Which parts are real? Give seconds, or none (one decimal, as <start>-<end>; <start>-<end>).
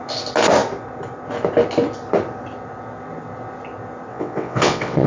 0.0-4.1